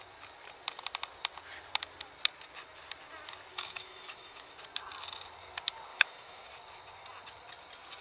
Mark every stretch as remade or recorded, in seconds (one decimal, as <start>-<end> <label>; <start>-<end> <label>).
0.0-3.5 recorded; 3.5-4.5 remade; 4.5-5.9 recorded; 5.9-6.5 remade; 6.5-8.0 recorded